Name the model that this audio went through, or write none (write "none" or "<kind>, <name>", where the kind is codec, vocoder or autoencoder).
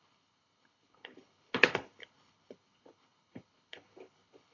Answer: codec, HILCodec